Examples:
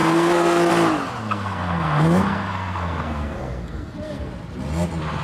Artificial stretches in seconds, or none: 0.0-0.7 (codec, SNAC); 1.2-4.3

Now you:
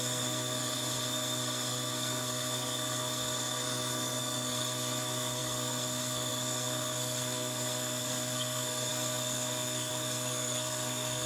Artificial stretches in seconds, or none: 0.0-11.3 (codec, SNAC)

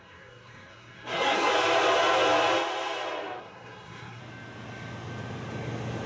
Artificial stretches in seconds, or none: 0.0-1.5 (codec, SNAC); 3.4-4.2

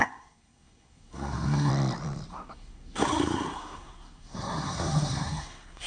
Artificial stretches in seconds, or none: 0.0-1.7 (codec, SNAC); 2.3-5.9

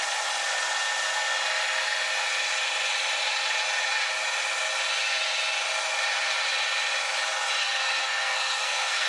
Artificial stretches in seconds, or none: 7.6-9.1 (codec, SNAC)

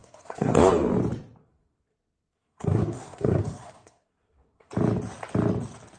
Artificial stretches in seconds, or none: 0.0-0.7 (codec, SNAC); 1.4-4.7